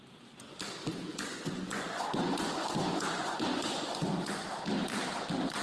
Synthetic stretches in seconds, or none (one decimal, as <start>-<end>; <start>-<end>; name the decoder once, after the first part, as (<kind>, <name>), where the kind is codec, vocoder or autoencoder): 1.1-4.5 (vocoder, Vocos)